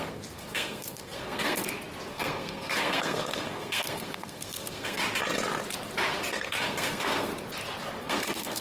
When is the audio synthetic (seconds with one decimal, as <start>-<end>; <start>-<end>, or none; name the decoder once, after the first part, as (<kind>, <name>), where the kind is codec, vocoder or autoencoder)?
0.0-1.6 (codec, SNAC); 2.1-5.0; 6.3-7.3; 8.0-8.6